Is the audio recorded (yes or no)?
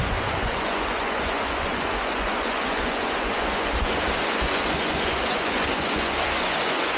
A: no